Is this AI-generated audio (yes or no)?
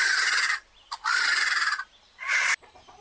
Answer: yes